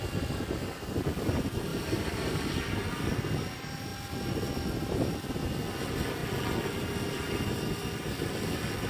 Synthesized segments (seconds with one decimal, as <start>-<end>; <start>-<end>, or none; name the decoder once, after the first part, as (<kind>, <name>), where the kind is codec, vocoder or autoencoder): 1.7-2.6 (vocoder, BigVGAN v2)

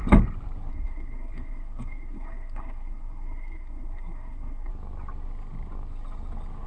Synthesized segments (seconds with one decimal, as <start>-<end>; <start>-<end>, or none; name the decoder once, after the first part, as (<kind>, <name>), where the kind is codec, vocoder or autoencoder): 0.7-4.7 (codec, SNAC)